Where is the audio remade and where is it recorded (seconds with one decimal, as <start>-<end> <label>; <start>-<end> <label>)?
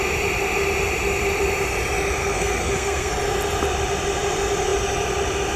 0.0-2.2 recorded; 2.2-3.1 remade; 3.1-5.6 recorded